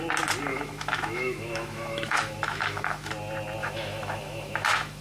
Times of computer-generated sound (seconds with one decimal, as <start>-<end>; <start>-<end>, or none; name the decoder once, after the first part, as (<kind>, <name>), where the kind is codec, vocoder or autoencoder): 0.5-3.1 (autoencoder, DAC-VAE); 3.6-5.0